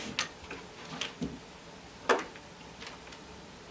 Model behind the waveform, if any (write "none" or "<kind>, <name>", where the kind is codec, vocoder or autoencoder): none